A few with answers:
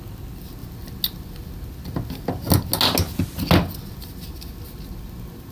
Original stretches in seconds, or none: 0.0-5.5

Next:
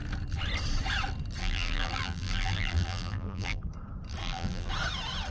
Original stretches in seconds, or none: 0.0-1.4; 3.6-4.2; 4.7-5.3

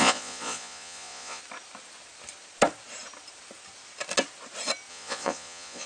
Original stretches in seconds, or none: 1.4-4.9